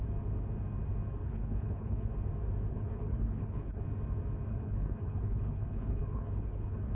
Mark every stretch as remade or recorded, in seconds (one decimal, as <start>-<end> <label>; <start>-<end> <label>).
0.0-1.2 recorded; 1.2-2.1 remade; 2.1-2.7 recorded; 2.7-3.8 remade; 3.8-4.5 recorded; 4.5-6.9 remade